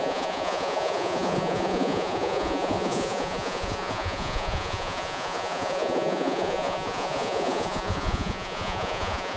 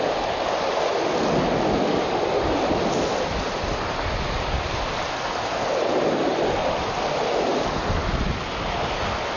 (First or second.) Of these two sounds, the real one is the second